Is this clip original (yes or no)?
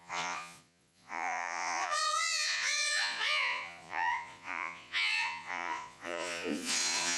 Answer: no